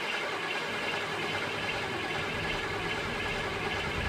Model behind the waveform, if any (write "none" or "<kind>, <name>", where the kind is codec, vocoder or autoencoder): none